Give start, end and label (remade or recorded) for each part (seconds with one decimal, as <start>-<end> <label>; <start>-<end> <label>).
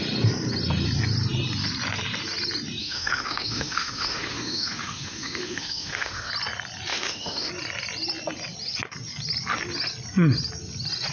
0.0-2.8 recorded; 2.8-6.3 remade; 6.3-6.9 recorded; 6.9-7.5 remade; 7.5-11.1 recorded